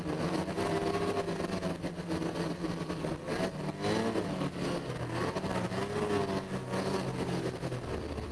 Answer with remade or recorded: recorded